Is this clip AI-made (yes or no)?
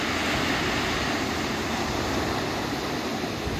no